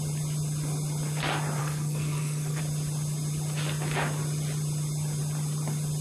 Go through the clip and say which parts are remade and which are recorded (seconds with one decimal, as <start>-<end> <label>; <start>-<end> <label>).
0.0-1.6 recorded; 1.6-2.6 remade; 2.6-6.0 recorded